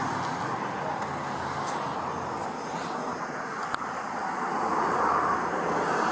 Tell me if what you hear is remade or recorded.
recorded